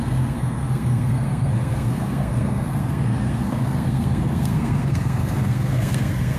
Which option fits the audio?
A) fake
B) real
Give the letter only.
A